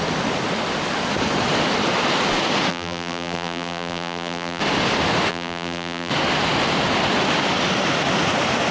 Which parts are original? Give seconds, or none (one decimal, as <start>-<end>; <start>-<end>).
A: 0.0-2.7; 4.6-5.3; 6.1-8.7